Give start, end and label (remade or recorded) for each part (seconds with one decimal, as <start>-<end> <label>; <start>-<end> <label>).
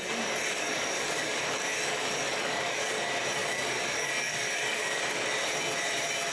0.0-0.4 recorded; 0.4-2.9 remade; 2.9-3.4 recorded; 3.4-5.0 remade; 5.0-6.3 recorded